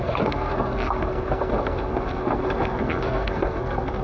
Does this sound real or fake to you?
fake